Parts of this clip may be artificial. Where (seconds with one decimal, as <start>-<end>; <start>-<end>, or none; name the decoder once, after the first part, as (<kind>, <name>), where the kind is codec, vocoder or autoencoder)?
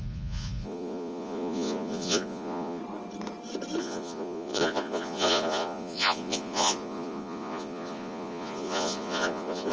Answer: 0.0-2.8 (vocoder, Vocos); 3.8-9.7